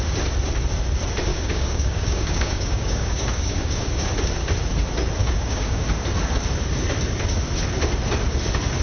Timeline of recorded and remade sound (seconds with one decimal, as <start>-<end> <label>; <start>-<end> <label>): 0.0-1.3 recorded; 1.3-4.1 remade; 4.1-5.2 recorded; 5.2-5.8 remade; 5.8-8.8 recorded